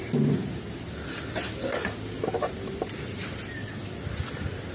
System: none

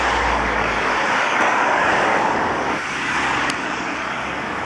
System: codec, DAC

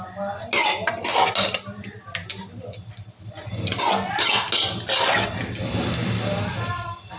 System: none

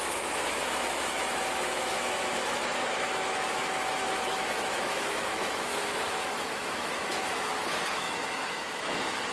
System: autoencoder, DAC-VAE